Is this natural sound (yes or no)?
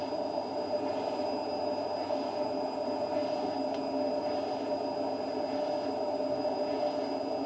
yes